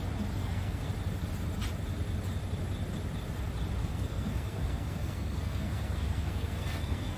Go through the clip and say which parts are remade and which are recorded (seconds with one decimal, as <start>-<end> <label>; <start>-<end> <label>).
0.0-0.4 recorded; 0.4-0.9 remade; 0.9-3.8 recorded; 3.8-7.2 remade